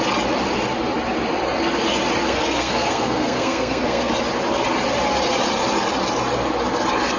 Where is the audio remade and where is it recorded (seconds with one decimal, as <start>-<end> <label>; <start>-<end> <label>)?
0.0-2.2 recorded; 2.2-4.1 remade; 4.1-7.2 recorded